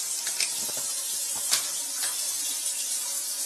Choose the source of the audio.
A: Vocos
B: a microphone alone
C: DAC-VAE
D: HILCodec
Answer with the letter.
B